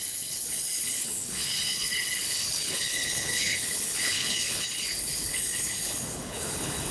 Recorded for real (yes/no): no